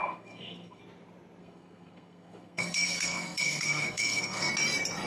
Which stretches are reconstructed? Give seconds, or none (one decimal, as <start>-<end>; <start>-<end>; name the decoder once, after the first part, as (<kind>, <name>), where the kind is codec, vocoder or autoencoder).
0.0-0.8 (codec, SNAC); 1.4-4.5